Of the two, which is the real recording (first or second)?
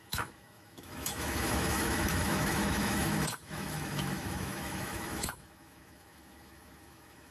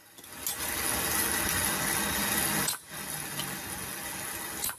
second